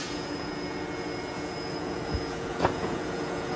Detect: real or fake fake